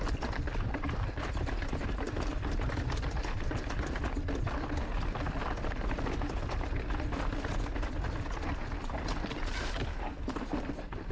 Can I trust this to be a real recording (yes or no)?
no